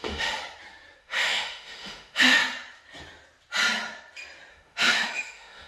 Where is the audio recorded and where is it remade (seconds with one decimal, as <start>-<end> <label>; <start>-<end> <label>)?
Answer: 0.0-0.4 remade; 0.4-1.0 recorded; 1.0-2.4 remade; 2.4-4.5 recorded; 4.5-5.7 remade